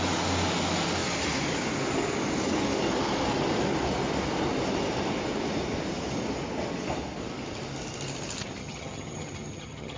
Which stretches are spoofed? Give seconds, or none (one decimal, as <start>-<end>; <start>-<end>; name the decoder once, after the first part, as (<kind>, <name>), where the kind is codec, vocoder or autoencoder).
8.6-10.0 (vocoder, HiFi-GAN)